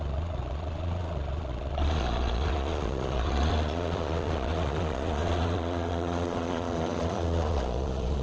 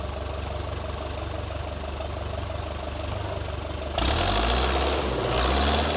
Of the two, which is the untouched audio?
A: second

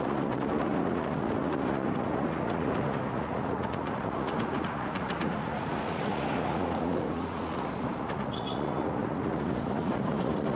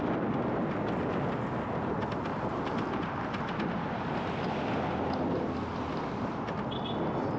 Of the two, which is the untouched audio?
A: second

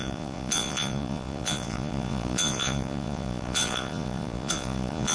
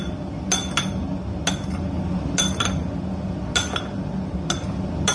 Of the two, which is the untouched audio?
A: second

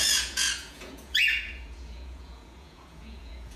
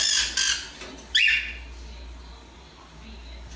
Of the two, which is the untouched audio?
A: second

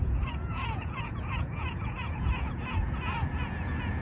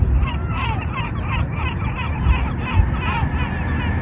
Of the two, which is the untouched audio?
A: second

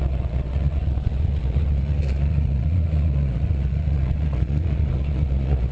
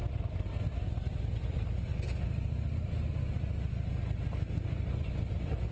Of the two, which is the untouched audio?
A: second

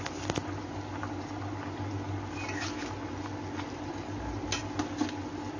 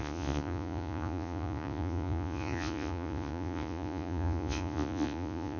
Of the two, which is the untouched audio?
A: first